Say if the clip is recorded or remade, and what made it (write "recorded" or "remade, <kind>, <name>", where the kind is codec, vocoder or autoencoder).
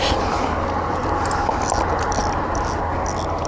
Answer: recorded